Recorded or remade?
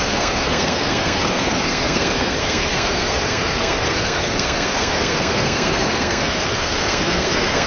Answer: remade